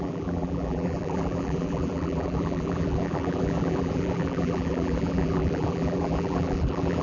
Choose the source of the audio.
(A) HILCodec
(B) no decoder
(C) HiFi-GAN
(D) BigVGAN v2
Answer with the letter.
D